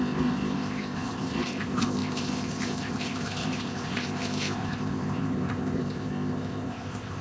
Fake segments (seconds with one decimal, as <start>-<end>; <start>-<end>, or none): 0.0-7.2